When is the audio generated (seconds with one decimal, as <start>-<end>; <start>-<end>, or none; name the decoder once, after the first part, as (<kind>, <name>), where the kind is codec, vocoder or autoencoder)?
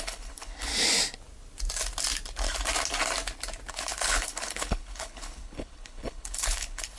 0.0-0.7 (codec, HILCodec); 3.7-7.0